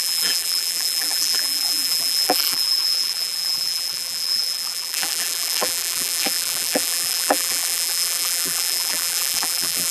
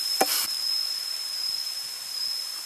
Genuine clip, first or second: second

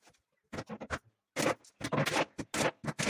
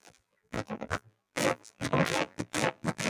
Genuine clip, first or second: first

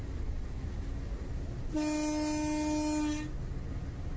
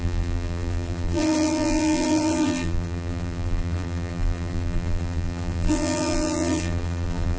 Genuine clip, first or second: first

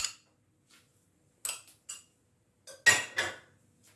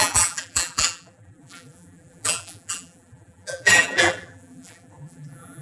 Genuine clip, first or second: first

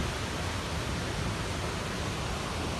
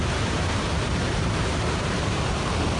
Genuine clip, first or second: first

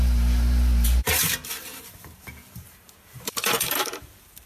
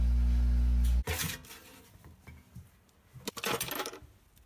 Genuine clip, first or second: second